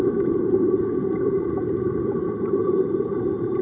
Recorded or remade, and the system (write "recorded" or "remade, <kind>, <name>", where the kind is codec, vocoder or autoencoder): recorded